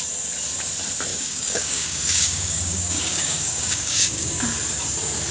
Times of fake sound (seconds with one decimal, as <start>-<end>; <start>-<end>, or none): 1.1-4.3